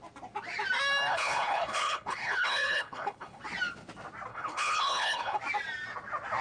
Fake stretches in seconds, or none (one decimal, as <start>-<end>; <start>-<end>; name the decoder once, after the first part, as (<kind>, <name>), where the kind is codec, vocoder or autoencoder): 1.1-3.4 (codec, HILCodec); 4.3-5.4